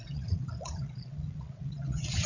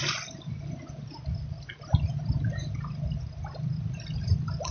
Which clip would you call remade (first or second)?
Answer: first